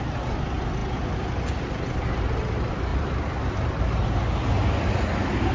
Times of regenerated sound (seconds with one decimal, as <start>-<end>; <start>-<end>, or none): 2.9-4.1